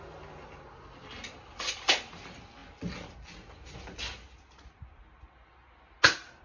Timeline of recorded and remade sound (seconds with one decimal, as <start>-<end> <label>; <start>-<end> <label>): 0.0-6.4 recorded